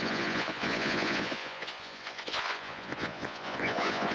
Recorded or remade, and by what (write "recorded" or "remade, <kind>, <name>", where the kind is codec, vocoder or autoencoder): remade, vocoder, Vocos